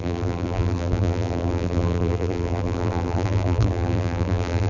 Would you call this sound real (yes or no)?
no